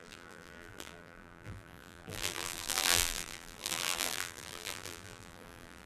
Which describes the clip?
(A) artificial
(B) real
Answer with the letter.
A